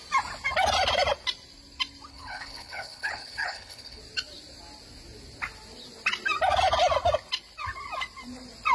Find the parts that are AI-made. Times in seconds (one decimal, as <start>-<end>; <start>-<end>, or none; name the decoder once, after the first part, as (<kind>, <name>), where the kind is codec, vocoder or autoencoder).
2.1-4.0 (codec, HILCodec)